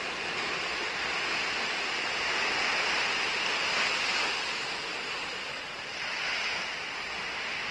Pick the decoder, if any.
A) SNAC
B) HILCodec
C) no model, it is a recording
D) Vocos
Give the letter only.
C